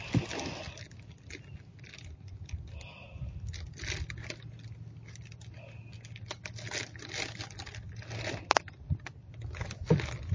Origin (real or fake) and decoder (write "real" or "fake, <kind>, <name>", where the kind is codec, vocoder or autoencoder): real